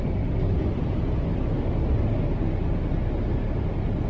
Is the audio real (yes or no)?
yes